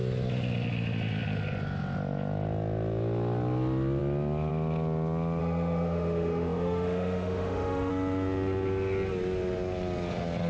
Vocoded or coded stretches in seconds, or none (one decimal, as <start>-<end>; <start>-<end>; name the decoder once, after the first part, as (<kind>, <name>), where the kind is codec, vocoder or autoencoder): 5.4-7.9 (autoencoder, DAC-VAE)